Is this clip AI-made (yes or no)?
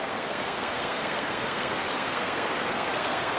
yes